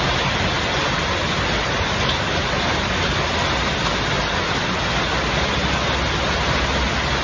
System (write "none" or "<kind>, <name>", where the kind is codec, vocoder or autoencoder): none